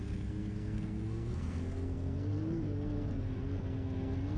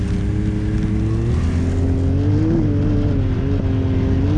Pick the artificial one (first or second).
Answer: first